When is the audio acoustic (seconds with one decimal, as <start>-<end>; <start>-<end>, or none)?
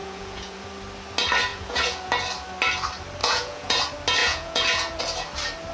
0.6-1.5; 2.1-3.2; 3.8-4.2; 5.0-5.7